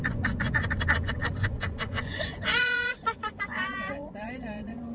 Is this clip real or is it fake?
fake